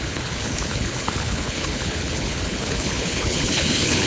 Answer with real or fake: fake